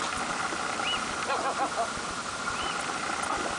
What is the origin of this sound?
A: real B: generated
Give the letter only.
A